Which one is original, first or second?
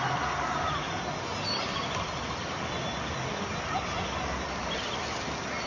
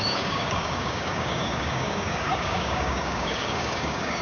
first